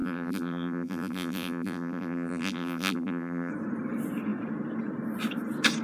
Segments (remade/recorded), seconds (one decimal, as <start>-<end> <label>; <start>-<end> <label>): 0.0-3.5 remade; 3.5-5.8 recorded

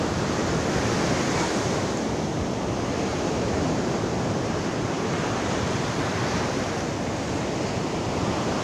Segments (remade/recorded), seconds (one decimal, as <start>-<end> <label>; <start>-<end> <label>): 0.0-3.1 recorded; 3.1-6.5 remade; 6.5-8.6 recorded

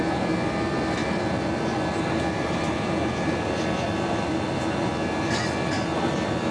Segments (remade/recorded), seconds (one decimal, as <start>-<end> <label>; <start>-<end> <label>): 0.0-1.0 recorded; 1.0-4.9 remade; 4.9-6.5 recorded

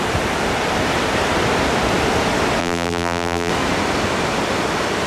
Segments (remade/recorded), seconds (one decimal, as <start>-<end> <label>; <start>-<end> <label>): 0.0-2.6 recorded; 2.6-3.5 remade; 3.5-5.1 recorded

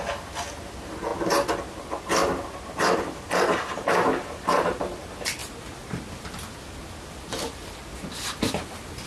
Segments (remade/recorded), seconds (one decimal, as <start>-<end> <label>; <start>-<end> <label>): 0.0-1.1 remade; 1.1-3.0 recorded; 3.0-5.4 remade; 5.4-9.1 recorded

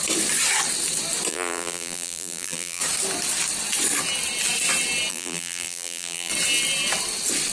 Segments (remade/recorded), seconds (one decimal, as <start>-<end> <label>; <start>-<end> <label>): 0.0-1.3 recorded; 1.3-2.8 remade; 2.8-5.1 recorded; 5.1-6.3 remade; 6.3-7.5 recorded

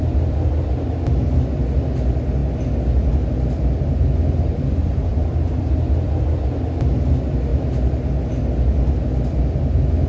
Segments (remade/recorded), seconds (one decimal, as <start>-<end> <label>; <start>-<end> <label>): 0.0-5.1 recorded; 5.1-6.3 remade; 6.3-7.5 recorded; 7.5-8.1 remade; 8.1-10.1 recorded

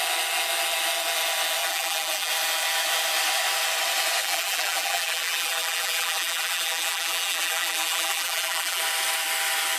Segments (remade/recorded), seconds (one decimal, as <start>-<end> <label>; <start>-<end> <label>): 0.0-1.6 recorded; 1.6-2.3 remade; 2.3-4.2 recorded; 4.2-8.8 remade; 8.8-9.8 recorded